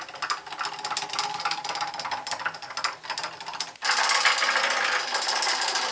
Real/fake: real